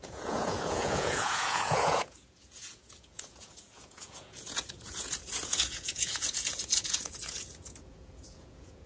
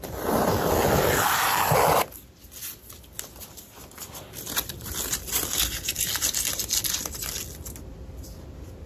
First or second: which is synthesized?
first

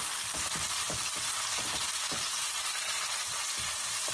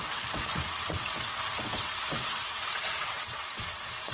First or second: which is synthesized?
second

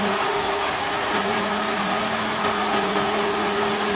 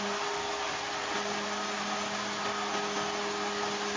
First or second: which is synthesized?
first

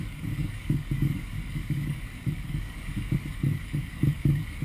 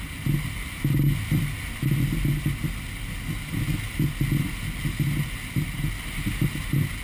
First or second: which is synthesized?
first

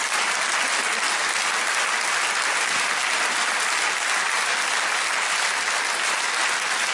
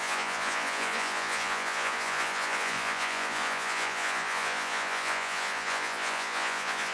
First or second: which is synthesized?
second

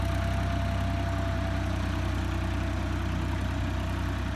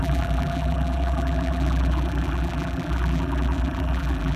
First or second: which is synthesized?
second